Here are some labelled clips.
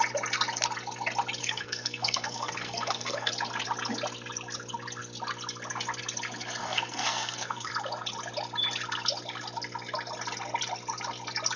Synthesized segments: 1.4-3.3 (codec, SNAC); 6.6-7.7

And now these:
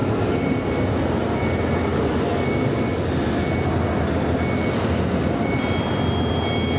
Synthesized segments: none